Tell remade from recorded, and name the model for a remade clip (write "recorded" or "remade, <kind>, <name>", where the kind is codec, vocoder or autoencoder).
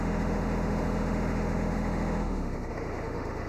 remade, autoencoder, DAC-VAE